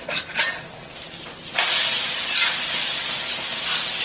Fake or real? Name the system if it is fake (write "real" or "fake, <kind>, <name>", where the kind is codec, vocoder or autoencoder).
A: real